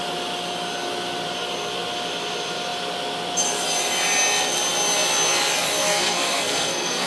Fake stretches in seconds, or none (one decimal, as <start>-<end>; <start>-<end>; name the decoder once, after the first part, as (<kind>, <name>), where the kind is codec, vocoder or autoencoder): 5.8-7.1 (codec, SNAC)